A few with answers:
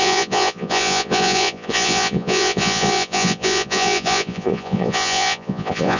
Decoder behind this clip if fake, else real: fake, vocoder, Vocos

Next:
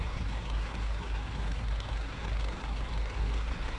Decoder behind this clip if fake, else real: fake, codec, SNAC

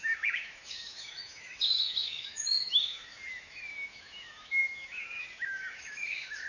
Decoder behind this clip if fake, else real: fake, autoencoder, DAC-VAE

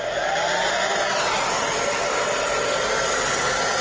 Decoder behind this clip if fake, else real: real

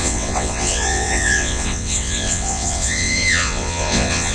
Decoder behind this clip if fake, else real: fake, vocoder, WaveNeXt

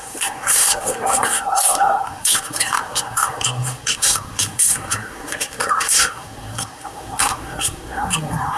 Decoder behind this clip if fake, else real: fake, codec, SNAC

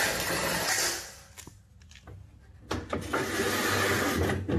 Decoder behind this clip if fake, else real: real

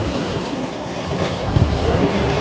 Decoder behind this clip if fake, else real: fake, codec, SNAC